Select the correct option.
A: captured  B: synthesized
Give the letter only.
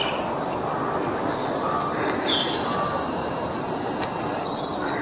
A